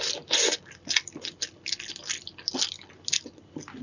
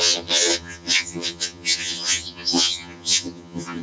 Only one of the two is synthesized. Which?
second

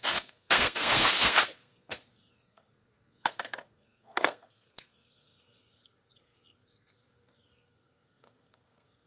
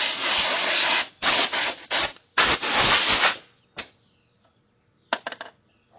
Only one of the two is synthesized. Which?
first